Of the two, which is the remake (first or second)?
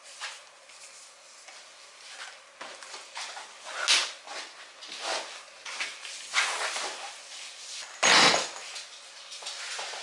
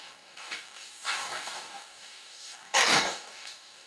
second